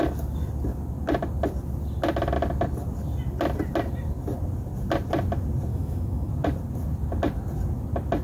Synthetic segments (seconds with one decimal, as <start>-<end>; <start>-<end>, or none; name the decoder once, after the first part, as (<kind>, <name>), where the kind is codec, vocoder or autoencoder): 5.7-6.3 (autoencoder, DAC-VAE)